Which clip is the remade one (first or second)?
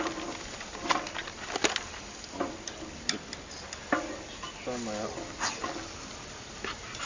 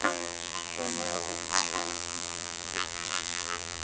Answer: second